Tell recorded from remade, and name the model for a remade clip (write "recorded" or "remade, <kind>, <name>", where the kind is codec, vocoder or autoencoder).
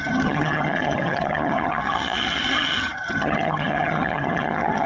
remade, vocoder, HiFi-GAN